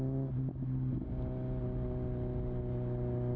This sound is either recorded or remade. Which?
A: recorded